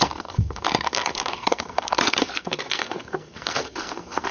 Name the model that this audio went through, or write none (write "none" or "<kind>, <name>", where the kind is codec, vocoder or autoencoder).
codec, SNAC